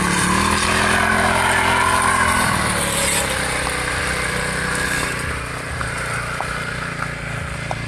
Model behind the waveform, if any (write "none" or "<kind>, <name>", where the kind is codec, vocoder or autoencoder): none